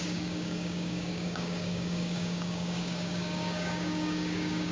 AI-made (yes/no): yes